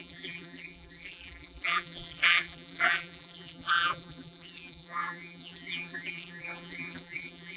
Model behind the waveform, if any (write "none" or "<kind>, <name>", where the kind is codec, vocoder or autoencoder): vocoder, BigVGAN v2